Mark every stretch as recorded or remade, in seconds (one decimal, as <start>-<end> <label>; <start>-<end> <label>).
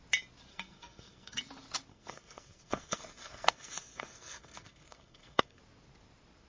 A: 0.0-0.5 recorded; 0.5-1.4 remade; 1.4-1.9 recorded; 1.9-5.6 remade; 5.6-6.5 recorded